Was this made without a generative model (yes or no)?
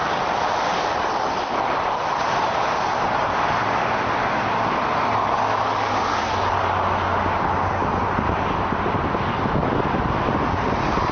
yes